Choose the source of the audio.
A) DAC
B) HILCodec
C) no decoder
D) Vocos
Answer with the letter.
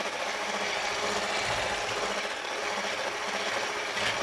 C